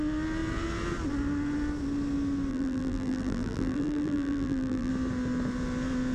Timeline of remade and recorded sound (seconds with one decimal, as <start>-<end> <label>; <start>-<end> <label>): 0.0-2.5 recorded; 2.5-4.9 remade; 4.9-6.1 recorded